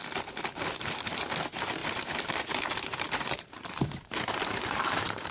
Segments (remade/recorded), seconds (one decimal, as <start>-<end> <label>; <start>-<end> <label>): 0.0-1.8 recorded; 1.8-5.3 remade